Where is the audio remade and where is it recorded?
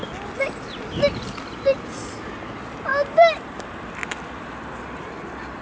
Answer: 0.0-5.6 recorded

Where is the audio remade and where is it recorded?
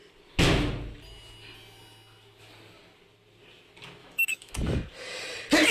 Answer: 0.0-4.0 recorded; 4.0-4.5 remade; 4.5-5.7 recorded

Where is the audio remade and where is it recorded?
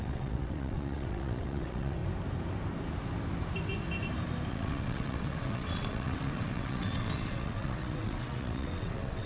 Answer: 0.0-2.0 remade; 2.0-4.5 recorded; 4.5-9.3 remade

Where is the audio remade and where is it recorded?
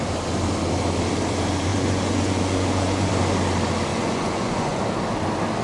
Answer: 0.0-1.7 recorded; 1.7-3.1 remade; 3.1-3.9 recorded; 3.9-4.8 remade; 4.8-5.6 recorded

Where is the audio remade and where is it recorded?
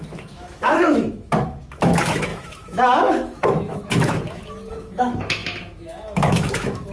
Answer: 0.0-6.9 remade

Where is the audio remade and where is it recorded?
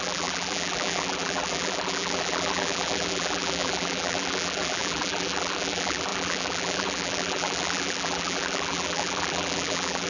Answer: 0.0-10.1 remade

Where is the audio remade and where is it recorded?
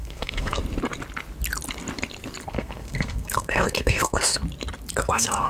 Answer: 0.0-0.6 remade; 0.6-2.5 recorded; 2.5-4.4 remade; 4.4-5.0 recorded; 5.0-5.5 remade